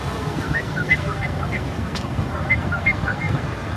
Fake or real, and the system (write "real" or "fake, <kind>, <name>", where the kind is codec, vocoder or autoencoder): fake, codec, SNAC